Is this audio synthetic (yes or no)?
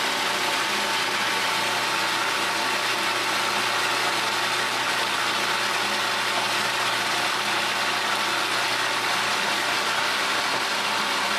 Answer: no